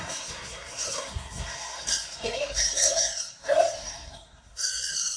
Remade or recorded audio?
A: remade